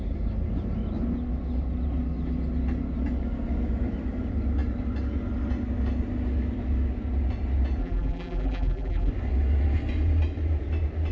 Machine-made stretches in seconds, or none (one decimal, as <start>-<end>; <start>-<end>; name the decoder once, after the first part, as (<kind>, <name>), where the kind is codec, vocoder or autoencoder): 7.8-9.1 (vocoder, BigVGAN v2)